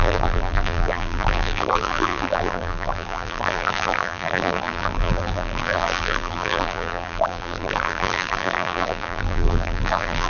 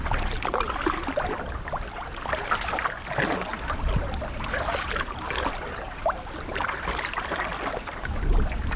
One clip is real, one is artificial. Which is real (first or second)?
second